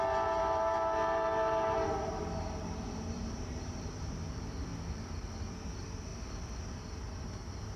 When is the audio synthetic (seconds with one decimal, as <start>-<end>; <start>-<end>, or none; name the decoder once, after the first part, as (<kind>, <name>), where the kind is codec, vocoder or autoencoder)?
0.0-4.7 (vocoder, BigVGAN v2); 5.5-6.1; 6.7-7.8